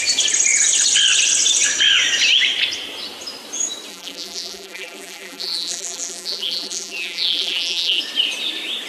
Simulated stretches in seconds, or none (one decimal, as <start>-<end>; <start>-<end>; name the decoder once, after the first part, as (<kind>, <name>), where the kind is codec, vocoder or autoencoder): 3.9-8.0 (vocoder, BigVGAN v2)